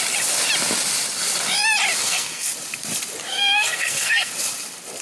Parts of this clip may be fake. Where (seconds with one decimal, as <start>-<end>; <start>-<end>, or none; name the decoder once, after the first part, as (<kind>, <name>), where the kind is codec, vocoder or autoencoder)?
2.0-2.5 (codec, SNAC); 3.3-4.3